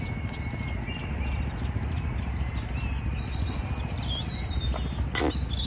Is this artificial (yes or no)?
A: no